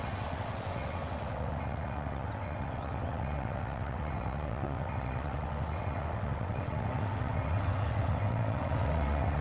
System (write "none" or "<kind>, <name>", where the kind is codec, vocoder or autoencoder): vocoder, WaveNeXt